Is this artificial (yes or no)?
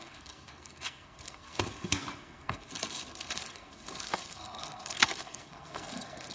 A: yes